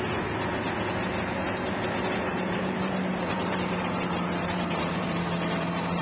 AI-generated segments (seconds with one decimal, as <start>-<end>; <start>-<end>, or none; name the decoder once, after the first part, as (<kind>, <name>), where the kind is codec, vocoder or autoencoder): 2.3-6.0 (vocoder, BigVGAN v2)